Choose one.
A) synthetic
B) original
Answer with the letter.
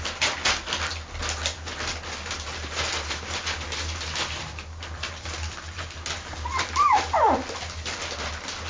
B